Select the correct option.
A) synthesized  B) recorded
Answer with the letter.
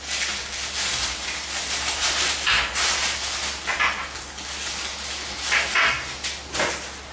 B